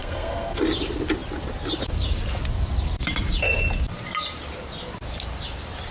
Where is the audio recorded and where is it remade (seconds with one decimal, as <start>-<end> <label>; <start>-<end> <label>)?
0.0-0.6 remade; 0.6-5.9 recorded